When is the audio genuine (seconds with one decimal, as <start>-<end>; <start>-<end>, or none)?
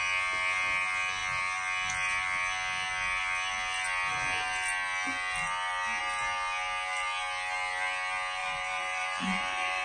0.0-8.4